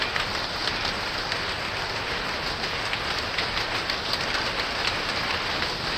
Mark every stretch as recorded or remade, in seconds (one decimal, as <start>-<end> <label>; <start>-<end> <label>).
0.0-6.0 recorded